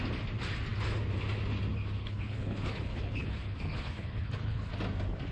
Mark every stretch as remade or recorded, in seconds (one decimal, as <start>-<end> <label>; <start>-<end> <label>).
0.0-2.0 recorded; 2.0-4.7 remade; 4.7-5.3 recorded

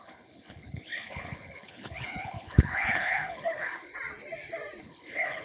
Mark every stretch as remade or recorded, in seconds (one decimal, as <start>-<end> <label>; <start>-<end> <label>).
0.0-3.9 remade; 3.9-4.8 recorded; 4.8-5.4 remade

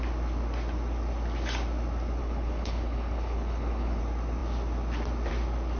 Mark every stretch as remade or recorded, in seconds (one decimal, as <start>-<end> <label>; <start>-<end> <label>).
0.0-2.2 recorded; 2.2-4.0 remade; 4.0-5.8 recorded

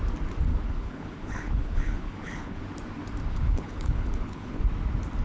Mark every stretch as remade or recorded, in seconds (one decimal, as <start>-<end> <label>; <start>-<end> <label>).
0.0-0.5 recorded; 0.5-2.6 remade; 2.6-3.3 recorded; 3.3-4.6 remade; 4.6-5.2 recorded

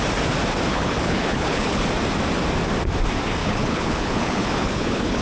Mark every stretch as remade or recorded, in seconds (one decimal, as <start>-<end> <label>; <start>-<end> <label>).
0.0-0.7 recorded; 0.7-1.8 remade; 1.8-3.4 recorded; 3.4-5.2 remade